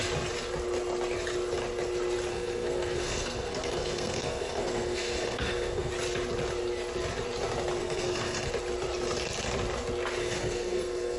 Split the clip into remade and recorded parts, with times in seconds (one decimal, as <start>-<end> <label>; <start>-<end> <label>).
0.0-2.3 recorded; 2.3-5.9 remade; 5.9-7.8 recorded; 7.8-8.5 remade; 8.5-10.2 recorded; 10.2-11.2 remade